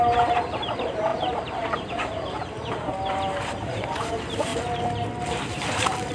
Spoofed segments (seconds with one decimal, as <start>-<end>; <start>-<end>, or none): 0.0-4.5; 5.3-6.1